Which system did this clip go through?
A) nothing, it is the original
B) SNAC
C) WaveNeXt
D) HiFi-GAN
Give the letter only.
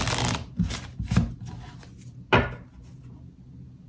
A